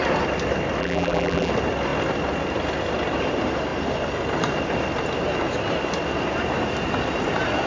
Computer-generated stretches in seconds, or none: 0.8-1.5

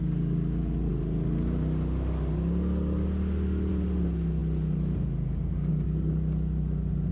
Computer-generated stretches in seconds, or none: none

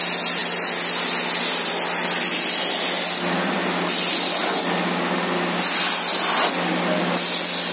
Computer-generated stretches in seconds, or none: none